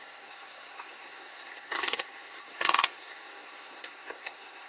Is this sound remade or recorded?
remade